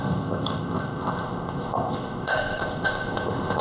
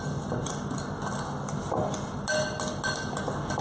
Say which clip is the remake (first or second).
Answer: first